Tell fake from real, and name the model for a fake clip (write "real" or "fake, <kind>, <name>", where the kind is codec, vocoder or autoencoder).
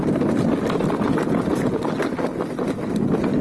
real